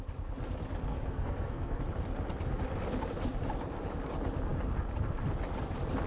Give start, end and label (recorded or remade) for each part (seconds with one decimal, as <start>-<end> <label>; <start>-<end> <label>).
0.0-0.9 recorded; 0.9-1.8 remade; 1.8-6.1 recorded